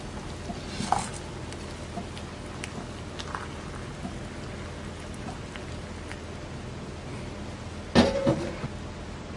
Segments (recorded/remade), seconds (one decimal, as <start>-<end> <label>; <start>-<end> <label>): 0.0-9.4 recorded

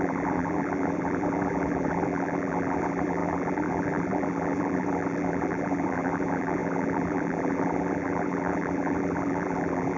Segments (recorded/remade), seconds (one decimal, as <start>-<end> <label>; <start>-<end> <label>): 0.0-10.0 remade

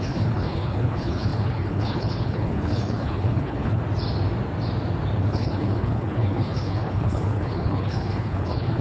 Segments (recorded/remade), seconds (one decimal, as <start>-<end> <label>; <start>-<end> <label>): 0.0-3.8 remade; 3.8-5.2 recorded; 5.2-8.8 remade

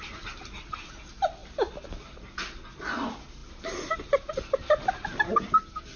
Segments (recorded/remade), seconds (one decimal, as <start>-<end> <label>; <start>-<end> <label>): 0.0-6.0 recorded